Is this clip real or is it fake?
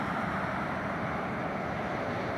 real